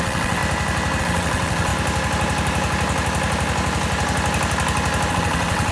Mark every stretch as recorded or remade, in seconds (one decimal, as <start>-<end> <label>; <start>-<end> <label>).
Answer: 0.0-0.4 remade; 0.4-1.0 recorded; 1.0-1.7 remade; 1.7-5.1 recorded; 5.1-5.7 remade